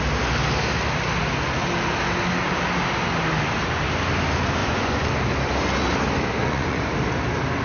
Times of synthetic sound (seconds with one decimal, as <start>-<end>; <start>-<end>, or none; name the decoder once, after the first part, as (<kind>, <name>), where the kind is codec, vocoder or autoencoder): 4.6-5.1 (vocoder, Vocos); 6.4-6.9